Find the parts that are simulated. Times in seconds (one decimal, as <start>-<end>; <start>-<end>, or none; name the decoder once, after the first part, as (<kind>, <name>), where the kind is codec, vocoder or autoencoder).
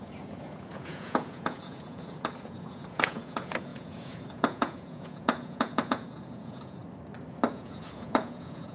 0.0-6.8 (vocoder, Vocos); 7.5-8.7